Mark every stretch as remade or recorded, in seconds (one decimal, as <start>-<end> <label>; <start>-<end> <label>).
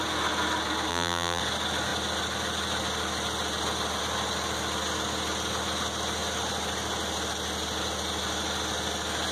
0.0-0.9 recorded; 0.9-1.4 remade; 1.4-9.3 recorded